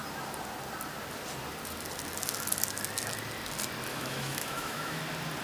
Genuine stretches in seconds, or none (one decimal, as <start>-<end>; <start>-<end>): 0.0-3.9; 5.0-5.4